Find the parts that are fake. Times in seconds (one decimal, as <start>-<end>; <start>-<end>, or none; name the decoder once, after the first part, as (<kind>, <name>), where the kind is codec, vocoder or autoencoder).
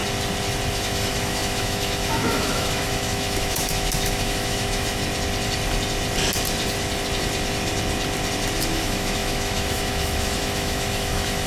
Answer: 0.7-5.0 (autoencoder, DAC-VAE); 8.7-11.5